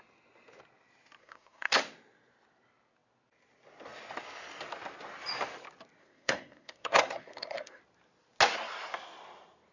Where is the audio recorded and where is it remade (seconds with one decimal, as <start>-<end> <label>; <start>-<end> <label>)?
0.0-1.2 recorded; 1.2-1.8 remade; 1.8-6.0 recorded; 6.0-7.8 remade; 7.8-9.7 recorded